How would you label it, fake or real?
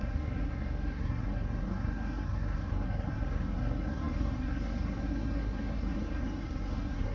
fake